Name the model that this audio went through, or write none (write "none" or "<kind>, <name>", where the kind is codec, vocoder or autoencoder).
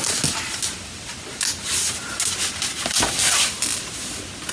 none